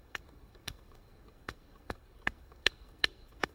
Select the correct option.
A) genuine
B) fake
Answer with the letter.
B